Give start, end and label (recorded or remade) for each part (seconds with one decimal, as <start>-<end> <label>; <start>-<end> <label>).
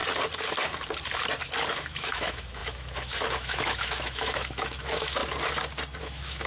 0.0-1.7 recorded; 1.7-5.2 remade; 5.2-6.0 recorded; 6.0-6.5 remade